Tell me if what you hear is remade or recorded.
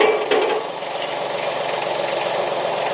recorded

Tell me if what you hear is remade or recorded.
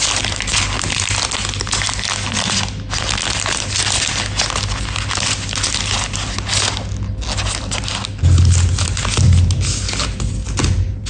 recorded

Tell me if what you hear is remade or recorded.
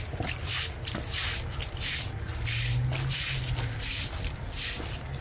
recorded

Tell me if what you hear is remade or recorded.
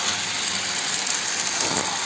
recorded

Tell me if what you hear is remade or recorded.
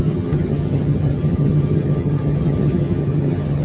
remade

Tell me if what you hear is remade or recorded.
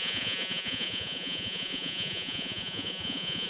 remade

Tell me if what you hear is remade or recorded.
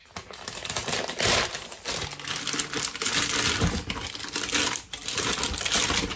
recorded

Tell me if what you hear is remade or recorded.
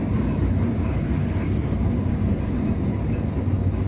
recorded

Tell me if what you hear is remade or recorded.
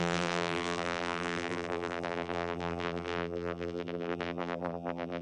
remade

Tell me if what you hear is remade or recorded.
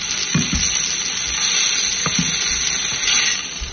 recorded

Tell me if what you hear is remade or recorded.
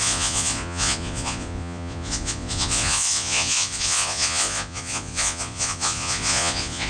remade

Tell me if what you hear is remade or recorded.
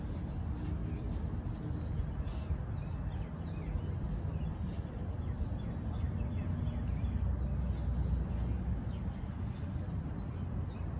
recorded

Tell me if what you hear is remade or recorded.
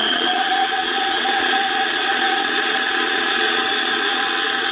remade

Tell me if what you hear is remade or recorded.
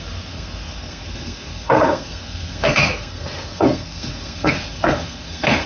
remade